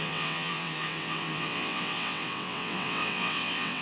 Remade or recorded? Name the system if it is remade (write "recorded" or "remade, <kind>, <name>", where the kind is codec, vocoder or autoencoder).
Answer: remade, vocoder, WaveNeXt